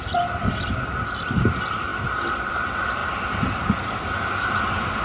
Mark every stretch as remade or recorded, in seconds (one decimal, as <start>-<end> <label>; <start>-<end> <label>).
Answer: 0.0-5.0 recorded